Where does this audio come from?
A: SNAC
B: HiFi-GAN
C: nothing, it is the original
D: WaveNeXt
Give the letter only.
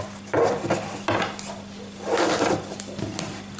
C